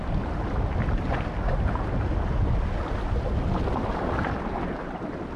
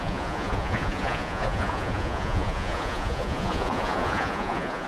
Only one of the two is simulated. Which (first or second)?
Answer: second